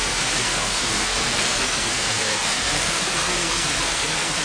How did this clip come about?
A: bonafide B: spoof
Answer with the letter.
B